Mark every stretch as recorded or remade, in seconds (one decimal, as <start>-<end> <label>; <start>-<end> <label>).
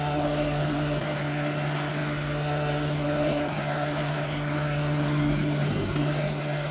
0.0-6.7 remade